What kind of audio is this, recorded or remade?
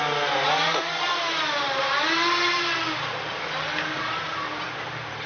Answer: recorded